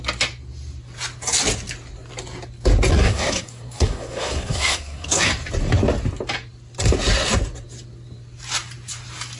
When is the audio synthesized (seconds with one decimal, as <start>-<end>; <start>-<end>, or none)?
2.9-5.3